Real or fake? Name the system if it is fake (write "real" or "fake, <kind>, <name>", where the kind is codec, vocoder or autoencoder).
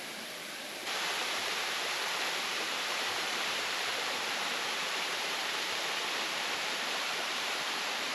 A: fake, vocoder, BigVGAN v2